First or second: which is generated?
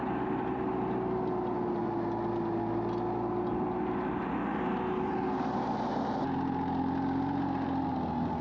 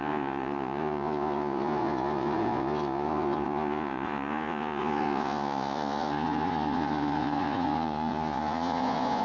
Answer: second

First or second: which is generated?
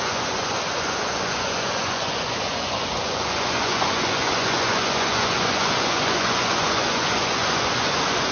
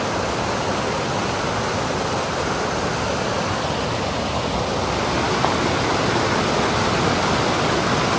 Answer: first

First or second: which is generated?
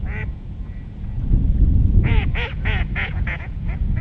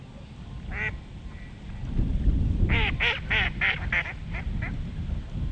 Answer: first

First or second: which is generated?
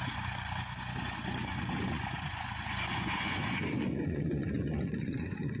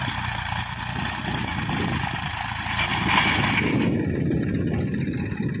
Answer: first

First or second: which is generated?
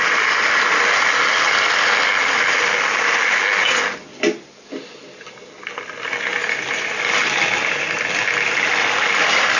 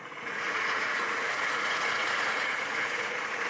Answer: second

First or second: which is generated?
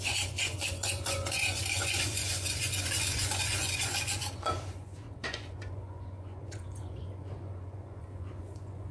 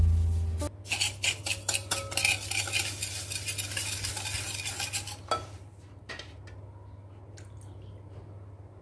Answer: first